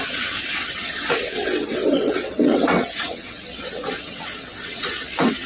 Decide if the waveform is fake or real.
fake